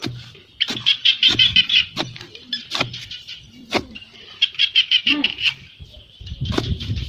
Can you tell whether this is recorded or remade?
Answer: remade